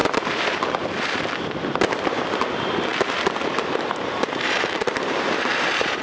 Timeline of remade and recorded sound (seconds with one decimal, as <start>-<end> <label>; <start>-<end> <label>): 0.0-1.2 remade; 1.2-2.9 recorded; 2.9-6.0 remade

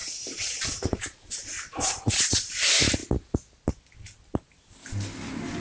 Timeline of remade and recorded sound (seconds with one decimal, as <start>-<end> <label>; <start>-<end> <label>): 0.0-2.3 remade; 2.3-5.6 recorded

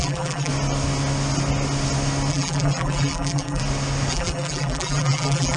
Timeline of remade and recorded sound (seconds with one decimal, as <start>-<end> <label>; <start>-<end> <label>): 0.0-0.5 remade; 0.5-2.3 recorded; 2.3-3.6 remade; 3.6-4.1 recorded; 4.1-5.6 remade

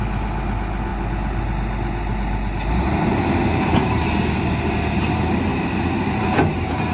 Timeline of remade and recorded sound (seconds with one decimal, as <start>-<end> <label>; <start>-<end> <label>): 0.0-3.8 recorded; 3.8-4.7 remade; 4.7-5.5 recorded; 5.5-6.2 remade; 6.2-6.9 recorded

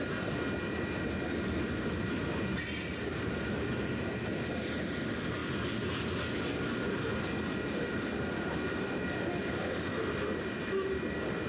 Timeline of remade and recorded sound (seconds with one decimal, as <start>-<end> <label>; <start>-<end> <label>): 0.0-11.5 recorded

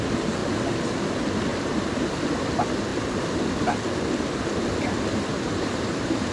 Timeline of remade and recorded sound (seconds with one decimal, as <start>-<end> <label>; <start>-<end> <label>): 0.0-1.5 recorded; 1.5-2.1 remade; 2.1-5.3 recorded; 5.3-6.3 remade

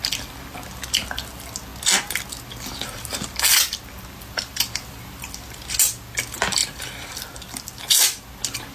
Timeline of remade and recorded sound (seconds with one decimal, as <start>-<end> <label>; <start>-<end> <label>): 0.0-6.6 recorded; 6.6-7.8 remade; 7.8-8.7 recorded